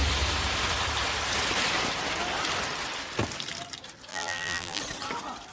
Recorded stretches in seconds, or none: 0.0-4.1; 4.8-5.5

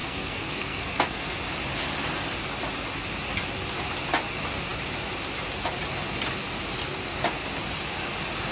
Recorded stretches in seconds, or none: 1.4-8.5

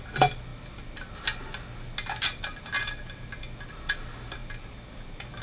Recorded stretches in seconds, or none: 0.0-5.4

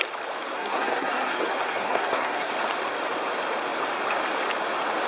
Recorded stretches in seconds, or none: 0.0-0.5; 2.5-5.1

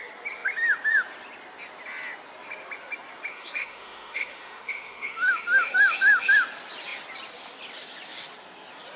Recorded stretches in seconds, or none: 0.0-3.3; 6.3-9.0

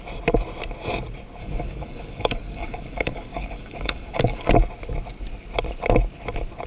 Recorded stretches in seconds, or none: 0.0-1.4; 4.5-6.7

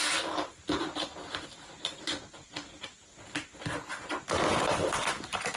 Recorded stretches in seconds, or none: 1.1-4.5